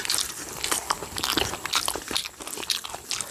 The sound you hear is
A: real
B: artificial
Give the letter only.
A